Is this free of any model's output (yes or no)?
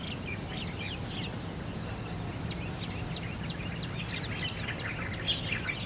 yes